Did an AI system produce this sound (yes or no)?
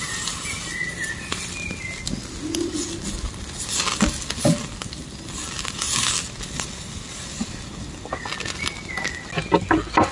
no